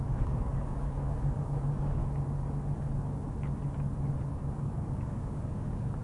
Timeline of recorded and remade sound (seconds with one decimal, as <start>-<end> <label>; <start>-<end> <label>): 0.0-2.0 remade; 2.0-4.3 recorded; 4.3-6.0 remade